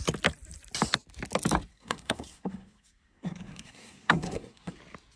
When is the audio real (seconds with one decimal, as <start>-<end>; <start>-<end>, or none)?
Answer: 0.0-1.7; 4.8-5.2